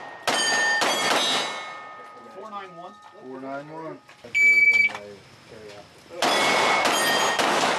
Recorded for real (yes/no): yes